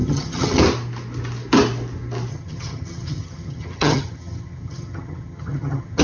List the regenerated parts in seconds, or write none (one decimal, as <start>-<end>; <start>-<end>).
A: 0.0-0.6; 2.3-6.0